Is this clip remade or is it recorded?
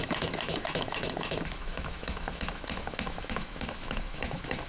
remade